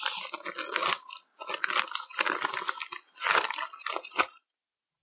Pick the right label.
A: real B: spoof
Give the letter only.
A